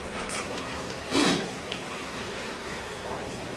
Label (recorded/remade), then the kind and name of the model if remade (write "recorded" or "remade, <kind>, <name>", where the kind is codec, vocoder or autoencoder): remade, codec, SNAC